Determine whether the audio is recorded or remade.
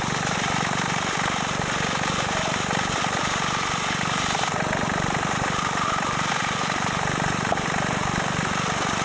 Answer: recorded